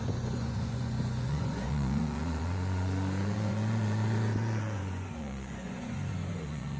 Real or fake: fake